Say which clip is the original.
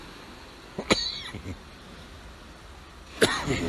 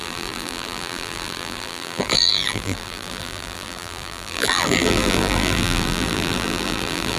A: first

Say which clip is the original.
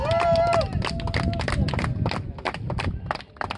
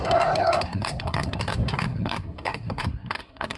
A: first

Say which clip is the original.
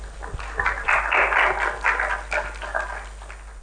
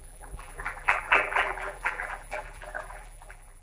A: first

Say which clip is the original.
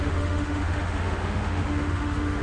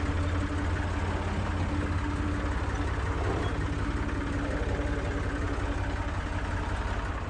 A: second